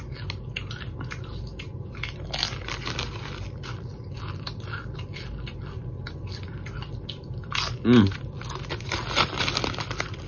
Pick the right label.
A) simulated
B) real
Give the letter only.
B